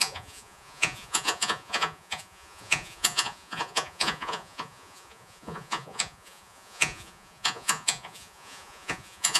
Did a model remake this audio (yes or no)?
yes